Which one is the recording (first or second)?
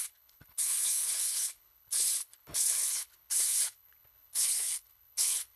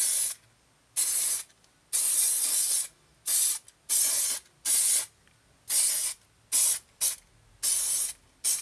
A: second